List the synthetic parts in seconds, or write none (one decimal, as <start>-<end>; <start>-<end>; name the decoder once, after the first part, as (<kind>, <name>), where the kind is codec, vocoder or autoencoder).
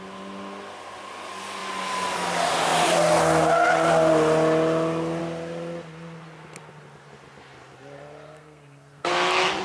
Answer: 8.4-9.1 (codec, SNAC)